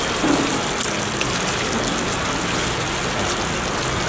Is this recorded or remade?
recorded